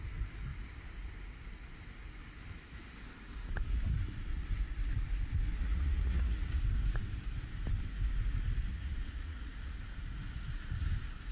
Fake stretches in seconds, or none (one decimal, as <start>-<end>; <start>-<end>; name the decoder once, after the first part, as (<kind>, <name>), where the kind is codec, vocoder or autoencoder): 5.6-6.6 (vocoder, Vocos); 8.7-9.7